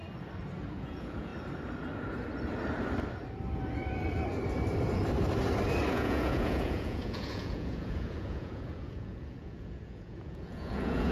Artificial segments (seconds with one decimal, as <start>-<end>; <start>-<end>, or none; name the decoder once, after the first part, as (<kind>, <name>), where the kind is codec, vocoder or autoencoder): 0.7-1.3 (vocoder, Vocos); 5.9-11.1